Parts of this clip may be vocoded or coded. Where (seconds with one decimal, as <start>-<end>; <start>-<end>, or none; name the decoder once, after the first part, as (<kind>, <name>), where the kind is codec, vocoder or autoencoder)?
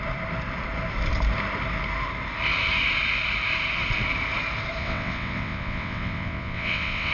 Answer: 4.8-7.1 (vocoder, WaveNeXt)